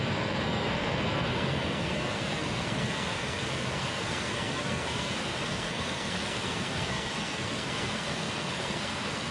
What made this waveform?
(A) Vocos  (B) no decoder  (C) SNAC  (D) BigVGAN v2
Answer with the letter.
C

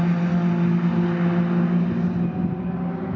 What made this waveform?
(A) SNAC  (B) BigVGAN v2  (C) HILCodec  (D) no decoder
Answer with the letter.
D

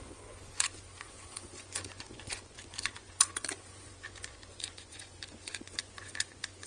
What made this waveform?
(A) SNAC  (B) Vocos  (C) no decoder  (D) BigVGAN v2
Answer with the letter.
B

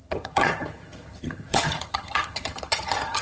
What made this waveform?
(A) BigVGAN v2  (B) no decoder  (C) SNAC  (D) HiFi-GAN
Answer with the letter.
D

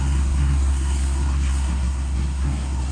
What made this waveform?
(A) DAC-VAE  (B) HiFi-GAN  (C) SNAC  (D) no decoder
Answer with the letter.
C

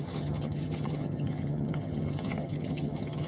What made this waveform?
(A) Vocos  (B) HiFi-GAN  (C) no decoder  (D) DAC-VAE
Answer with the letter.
B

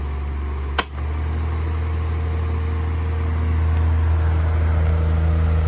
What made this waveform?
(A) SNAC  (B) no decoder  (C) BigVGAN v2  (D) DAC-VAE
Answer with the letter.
B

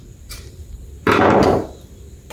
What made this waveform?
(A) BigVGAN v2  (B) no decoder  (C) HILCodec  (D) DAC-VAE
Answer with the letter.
A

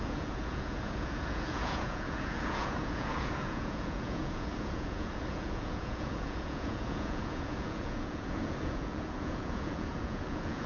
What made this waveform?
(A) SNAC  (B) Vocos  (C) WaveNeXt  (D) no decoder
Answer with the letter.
B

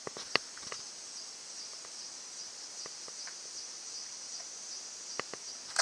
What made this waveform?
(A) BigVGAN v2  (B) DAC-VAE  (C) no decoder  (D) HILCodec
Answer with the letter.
C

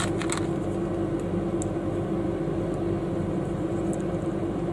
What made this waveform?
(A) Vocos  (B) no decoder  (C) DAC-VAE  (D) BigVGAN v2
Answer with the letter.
B